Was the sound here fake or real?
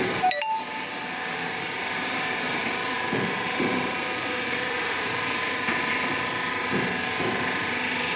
fake